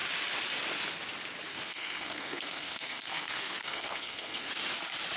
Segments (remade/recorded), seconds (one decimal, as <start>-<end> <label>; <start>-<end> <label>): 0.0-1.5 recorded; 1.5-4.5 remade; 4.5-5.2 recorded